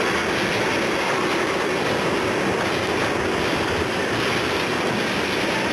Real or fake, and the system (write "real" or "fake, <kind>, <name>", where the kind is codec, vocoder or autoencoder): real